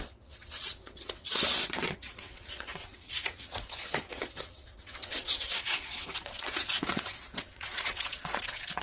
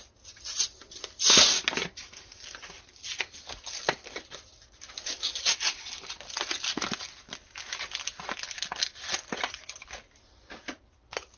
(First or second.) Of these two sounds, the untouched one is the second